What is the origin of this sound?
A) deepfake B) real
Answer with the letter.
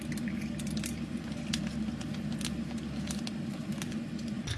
B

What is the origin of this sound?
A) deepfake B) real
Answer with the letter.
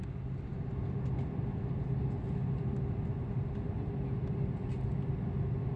B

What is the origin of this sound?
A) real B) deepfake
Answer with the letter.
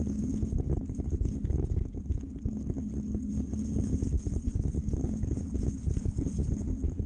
B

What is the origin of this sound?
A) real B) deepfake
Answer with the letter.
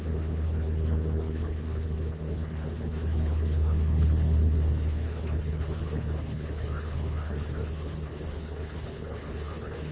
B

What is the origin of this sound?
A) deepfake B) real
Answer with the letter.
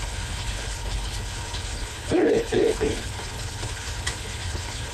A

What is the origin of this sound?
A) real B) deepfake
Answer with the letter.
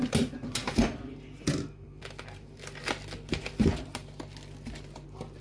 A